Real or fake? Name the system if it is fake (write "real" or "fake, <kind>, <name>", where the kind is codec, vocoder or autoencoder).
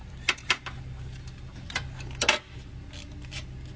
real